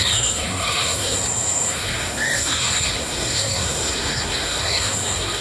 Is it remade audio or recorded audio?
remade